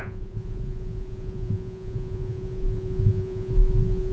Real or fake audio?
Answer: fake